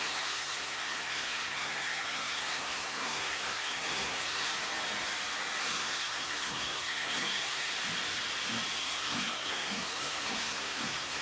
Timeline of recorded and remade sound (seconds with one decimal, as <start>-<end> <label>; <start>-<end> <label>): 0.0-4.5 remade; 4.5-5.6 recorded; 5.6-7.7 remade; 7.7-8.8 recorded; 8.8-11.2 remade